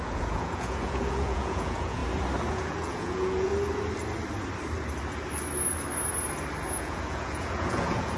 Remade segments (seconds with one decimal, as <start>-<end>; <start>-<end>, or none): 0.0-2.0; 2.5-3.5; 6.7-8.2